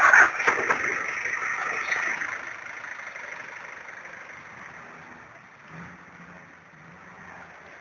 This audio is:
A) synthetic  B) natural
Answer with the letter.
B